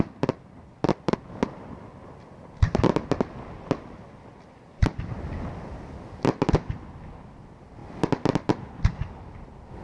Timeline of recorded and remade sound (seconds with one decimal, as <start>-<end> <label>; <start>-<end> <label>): 0.0-9.8 recorded